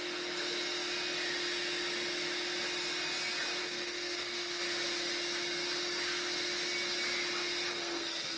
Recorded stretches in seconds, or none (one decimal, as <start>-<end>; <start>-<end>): 0.0-3.6; 4.6-7.7